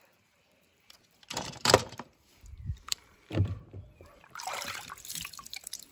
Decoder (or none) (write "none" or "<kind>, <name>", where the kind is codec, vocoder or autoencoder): vocoder, BigVGAN v2